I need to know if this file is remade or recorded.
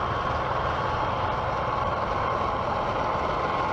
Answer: recorded